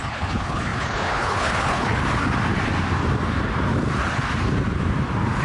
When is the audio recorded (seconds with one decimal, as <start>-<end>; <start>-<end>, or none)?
2.0-5.4

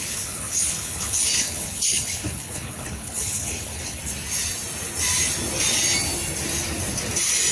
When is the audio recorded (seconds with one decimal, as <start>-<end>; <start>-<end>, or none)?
4.0-7.5

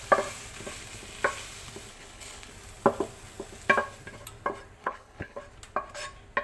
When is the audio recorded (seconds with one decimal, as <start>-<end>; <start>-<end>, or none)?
0.0-1.9; 2.5-4.8; 5.4-6.4

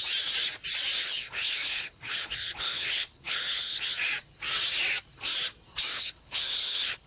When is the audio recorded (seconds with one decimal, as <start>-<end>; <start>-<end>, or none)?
0.0-1.0; 3.9-5.9